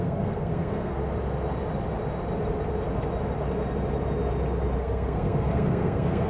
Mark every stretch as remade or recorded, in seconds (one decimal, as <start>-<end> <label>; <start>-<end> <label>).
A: 0.0-1.0 remade; 1.0-4.8 recorded; 4.8-6.3 remade